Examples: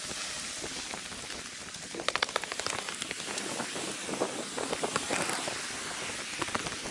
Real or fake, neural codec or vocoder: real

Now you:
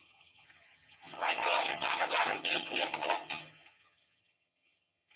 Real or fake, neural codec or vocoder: fake, vocoder, HiFi-GAN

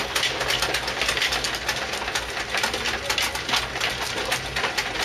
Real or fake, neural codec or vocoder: real